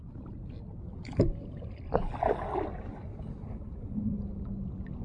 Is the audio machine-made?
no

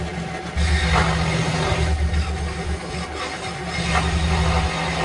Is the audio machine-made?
no